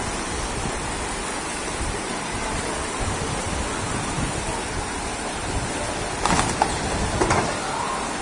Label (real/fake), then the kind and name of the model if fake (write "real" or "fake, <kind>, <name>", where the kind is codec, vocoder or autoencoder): real